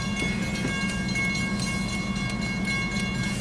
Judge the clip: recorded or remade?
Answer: recorded